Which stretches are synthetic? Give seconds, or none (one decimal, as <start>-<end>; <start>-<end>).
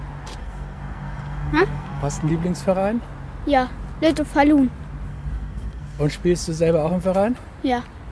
0.4-2.3; 5.1-6.0